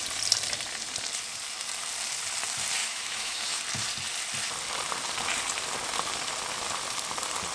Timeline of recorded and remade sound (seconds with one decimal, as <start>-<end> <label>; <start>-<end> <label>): 0.0-2.8 recorded; 2.8-3.6 remade; 3.6-7.5 recorded